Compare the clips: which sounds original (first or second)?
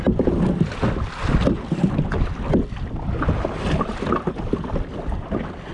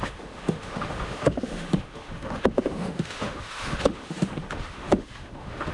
first